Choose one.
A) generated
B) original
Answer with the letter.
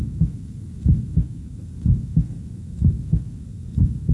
A